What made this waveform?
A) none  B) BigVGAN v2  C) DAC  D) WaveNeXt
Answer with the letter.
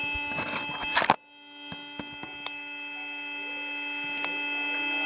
A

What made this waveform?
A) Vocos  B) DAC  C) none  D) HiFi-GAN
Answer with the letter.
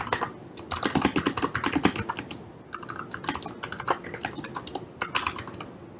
C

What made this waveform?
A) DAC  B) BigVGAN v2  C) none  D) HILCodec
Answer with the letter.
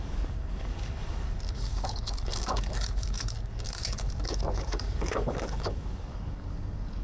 A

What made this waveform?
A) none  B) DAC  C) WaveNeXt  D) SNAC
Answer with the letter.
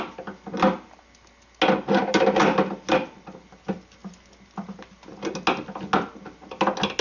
A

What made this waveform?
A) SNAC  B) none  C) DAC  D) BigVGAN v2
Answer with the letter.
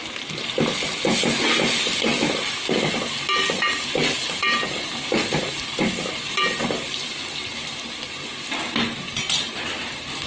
B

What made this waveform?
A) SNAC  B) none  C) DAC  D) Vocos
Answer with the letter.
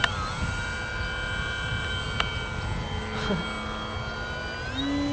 B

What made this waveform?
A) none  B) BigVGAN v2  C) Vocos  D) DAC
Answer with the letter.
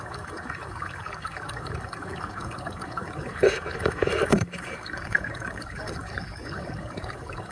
D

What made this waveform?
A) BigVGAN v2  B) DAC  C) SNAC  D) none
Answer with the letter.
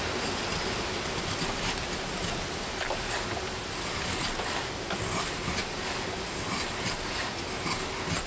D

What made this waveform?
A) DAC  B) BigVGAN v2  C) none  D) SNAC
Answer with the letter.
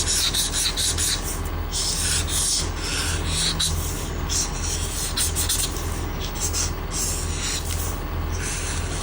C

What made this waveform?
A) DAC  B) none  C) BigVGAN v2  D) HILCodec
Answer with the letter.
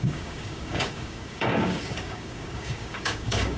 A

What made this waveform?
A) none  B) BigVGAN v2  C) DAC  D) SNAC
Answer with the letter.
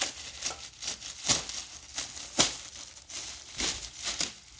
A